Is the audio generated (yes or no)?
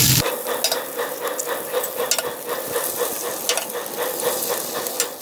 no